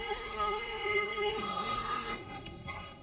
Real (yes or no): no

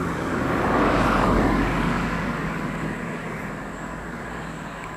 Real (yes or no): no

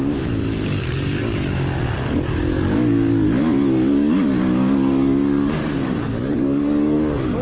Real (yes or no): no